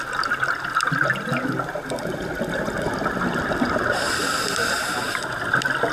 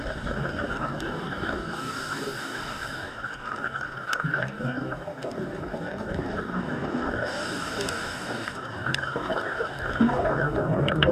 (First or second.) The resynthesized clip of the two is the second